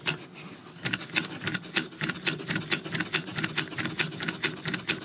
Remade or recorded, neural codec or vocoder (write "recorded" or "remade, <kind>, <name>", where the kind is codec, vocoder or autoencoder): recorded